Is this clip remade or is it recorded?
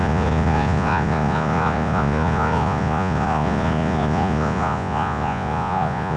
remade